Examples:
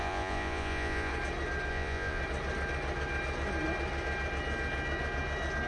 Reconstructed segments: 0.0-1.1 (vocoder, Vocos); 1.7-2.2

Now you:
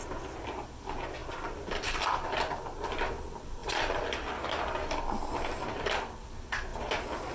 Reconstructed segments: 1.2-1.7 (vocoder, BigVGAN v2); 3.6-5.0

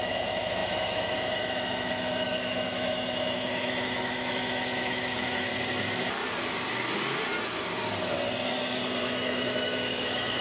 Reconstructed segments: 0.0-5.5 (autoencoder, DAC-VAE); 9.0-10.4

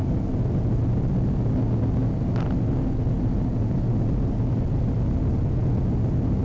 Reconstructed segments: none

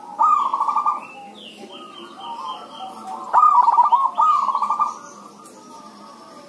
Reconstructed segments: none

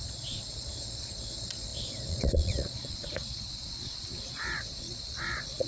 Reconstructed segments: 0.0-5.7 (vocoder, Vocos)